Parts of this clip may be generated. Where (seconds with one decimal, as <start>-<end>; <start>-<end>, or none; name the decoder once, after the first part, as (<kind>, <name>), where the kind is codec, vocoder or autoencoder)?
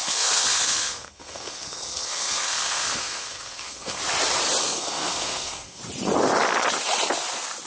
0.0-4.0 (codec, SNAC); 4.6-5.8